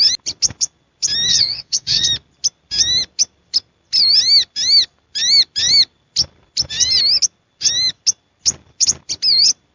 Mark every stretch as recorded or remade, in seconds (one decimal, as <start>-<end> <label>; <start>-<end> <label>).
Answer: 0.0-1.3 recorded; 1.3-2.1 remade; 2.1-9.7 recorded